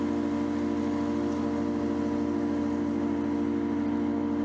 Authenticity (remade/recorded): recorded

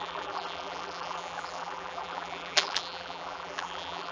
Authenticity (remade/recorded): remade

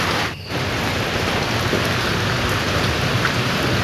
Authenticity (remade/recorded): recorded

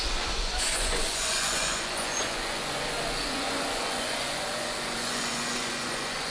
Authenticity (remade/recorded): remade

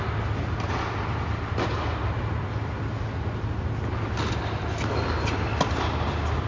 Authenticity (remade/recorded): recorded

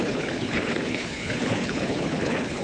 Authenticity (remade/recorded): remade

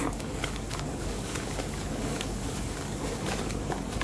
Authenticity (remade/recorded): remade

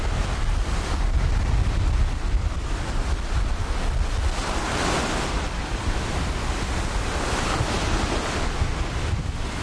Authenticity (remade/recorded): recorded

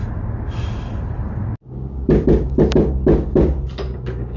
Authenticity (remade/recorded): recorded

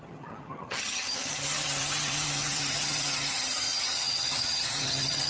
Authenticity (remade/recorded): remade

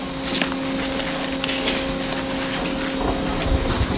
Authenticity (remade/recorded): recorded